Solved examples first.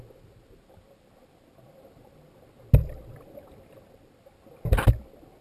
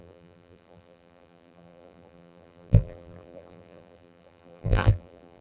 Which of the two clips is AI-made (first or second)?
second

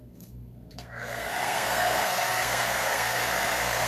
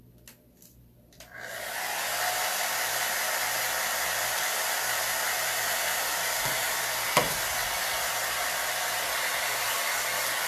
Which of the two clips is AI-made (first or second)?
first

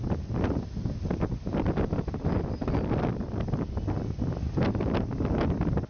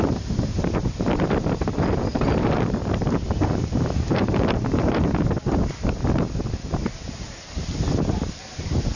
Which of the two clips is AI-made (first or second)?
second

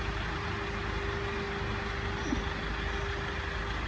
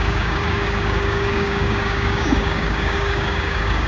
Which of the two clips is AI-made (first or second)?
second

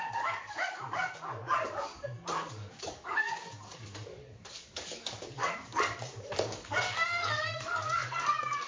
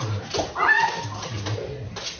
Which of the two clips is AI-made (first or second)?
first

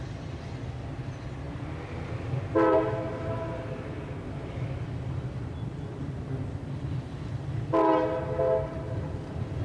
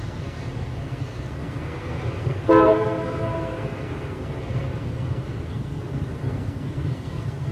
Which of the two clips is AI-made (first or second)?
second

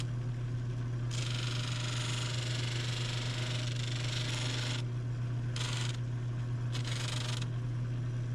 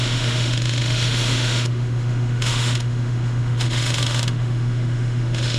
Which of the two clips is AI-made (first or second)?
second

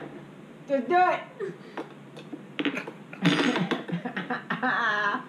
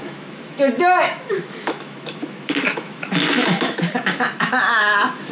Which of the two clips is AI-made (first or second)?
second